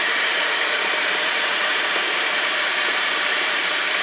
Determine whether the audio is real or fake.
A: fake